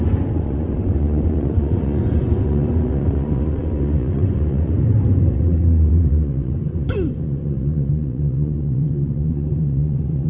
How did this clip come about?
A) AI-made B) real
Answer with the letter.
A